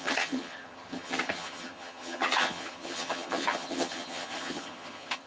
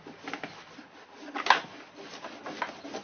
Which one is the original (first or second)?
second